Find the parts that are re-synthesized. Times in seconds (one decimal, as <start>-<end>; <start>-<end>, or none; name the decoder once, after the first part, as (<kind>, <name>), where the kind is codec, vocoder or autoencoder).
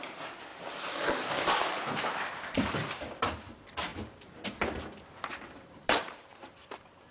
0.0-7.1 (vocoder, BigVGAN v2)